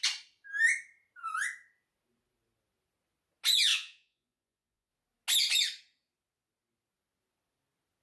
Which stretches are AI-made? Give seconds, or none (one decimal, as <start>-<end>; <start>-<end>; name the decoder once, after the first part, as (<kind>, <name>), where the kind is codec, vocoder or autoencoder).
3.7-4.9 (vocoder, Vocos)